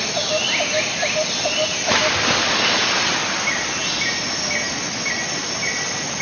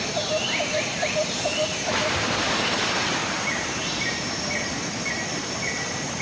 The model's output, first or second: second